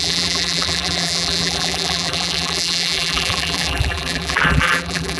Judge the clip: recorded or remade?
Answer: remade